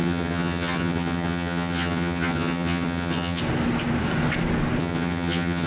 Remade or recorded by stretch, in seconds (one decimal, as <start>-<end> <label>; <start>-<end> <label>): 0.0-3.4 remade; 3.4-4.8 recorded; 4.8-5.7 remade